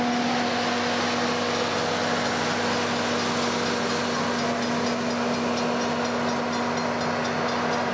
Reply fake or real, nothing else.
real